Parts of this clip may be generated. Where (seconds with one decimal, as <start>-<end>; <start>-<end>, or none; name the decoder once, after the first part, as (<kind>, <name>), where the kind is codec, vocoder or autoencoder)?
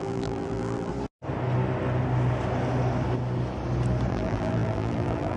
0.0-0.9 (vocoder, BigVGAN v2); 4.1-5.4